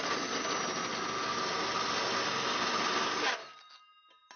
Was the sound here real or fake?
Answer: real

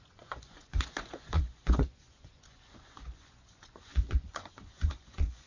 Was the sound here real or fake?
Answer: fake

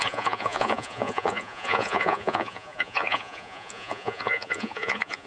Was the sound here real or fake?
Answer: fake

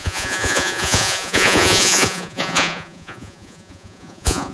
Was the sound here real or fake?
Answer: fake